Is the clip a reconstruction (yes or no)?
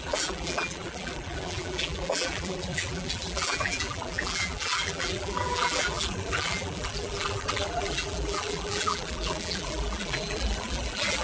yes